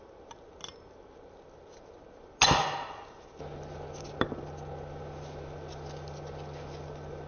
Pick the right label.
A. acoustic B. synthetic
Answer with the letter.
A